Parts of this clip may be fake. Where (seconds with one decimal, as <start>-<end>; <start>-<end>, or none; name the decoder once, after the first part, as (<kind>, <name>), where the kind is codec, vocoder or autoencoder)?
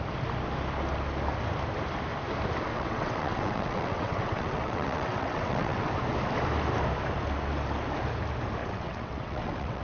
2.7-5.9 (vocoder, WaveNeXt); 8.6-9.8